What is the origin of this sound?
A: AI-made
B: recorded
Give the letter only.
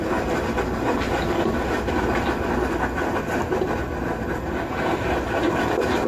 B